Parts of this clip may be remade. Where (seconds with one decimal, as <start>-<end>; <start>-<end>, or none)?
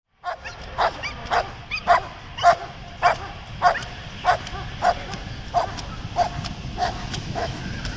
6.8-7.6